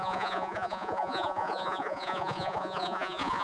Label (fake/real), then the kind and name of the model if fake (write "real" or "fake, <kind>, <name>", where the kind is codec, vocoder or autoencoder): fake, vocoder, Vocos